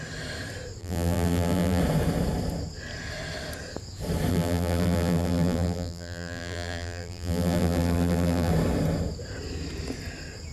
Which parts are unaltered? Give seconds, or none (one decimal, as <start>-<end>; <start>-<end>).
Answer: 0.0-0.8; 1.8-4.3; 8.5-10.5